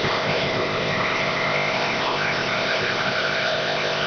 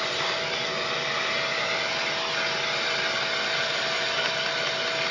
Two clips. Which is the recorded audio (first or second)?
second